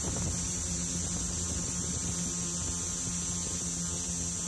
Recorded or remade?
recorded